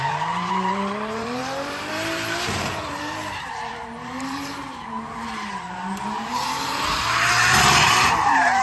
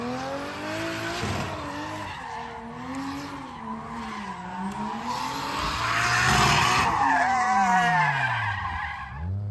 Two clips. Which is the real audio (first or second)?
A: second